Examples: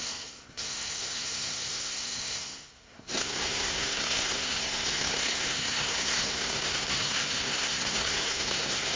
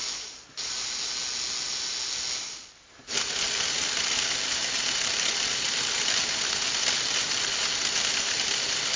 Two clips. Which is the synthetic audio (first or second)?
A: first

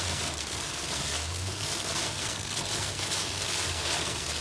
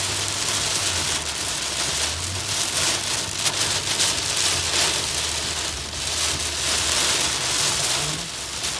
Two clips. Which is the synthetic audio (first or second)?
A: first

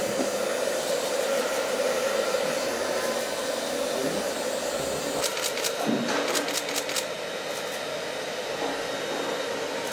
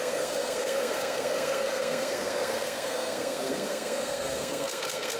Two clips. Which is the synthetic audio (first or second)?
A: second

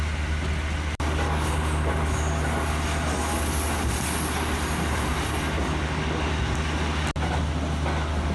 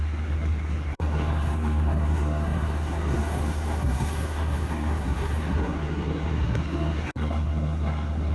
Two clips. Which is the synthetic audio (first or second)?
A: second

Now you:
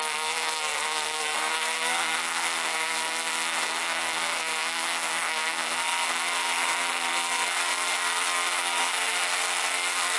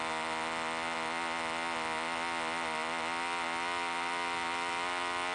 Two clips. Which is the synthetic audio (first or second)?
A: first